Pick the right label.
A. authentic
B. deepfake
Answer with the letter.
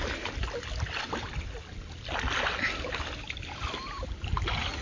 A